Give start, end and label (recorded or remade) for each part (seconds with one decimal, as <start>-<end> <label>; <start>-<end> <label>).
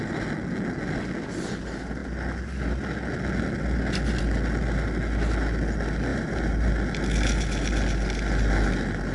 0.0-6.1 recorded; 6.1-6.7 remade; 6.7-9.1 recorded